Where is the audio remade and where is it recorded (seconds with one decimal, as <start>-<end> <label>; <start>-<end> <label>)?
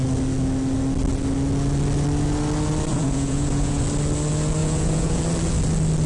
0.0-2.9 recorded; 2.9-3.8 remade; 3.8-4.6 recorded; 4.6-5.2 remade; 5.2-6.1 recorded